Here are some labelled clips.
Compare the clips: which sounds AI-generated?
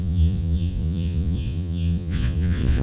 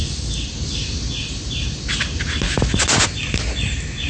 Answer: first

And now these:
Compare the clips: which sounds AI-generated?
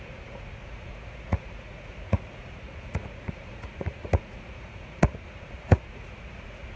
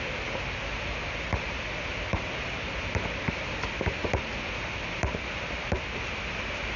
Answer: first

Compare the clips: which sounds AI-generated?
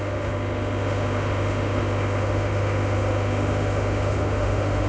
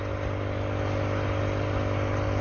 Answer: first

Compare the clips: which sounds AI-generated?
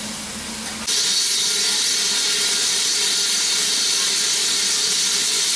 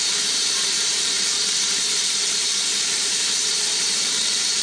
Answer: second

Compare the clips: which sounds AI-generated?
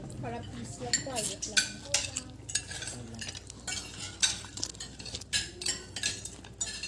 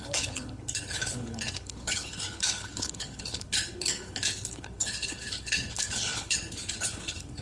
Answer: second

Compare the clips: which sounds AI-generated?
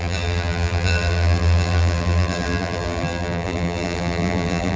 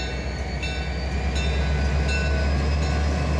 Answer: first